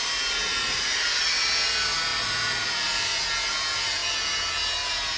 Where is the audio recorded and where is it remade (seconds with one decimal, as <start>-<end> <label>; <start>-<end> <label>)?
0.0-0.5 recorded; 0.5-1.2 remade; 1.2-2.1 recorded; 2.1-3.2 remade; 3.2-5.2 recorded